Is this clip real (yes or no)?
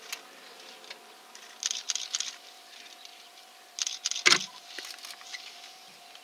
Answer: yes